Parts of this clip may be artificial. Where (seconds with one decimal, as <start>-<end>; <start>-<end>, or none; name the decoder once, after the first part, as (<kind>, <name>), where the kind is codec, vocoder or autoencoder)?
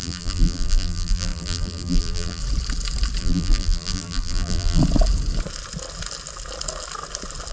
0.0-2.4 (vocoder, BigVGAN v2); 3.2-4.8